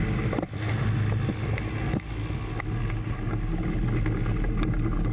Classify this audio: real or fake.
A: real